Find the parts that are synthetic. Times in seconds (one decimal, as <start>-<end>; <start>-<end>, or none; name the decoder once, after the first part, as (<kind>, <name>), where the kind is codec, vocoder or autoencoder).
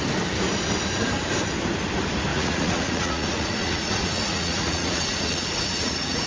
2.3-6.3 (vocoder, Vocos)